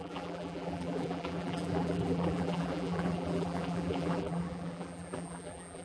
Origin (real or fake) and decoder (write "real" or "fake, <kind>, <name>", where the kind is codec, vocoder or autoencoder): fake, vocoder, BigVGAN v2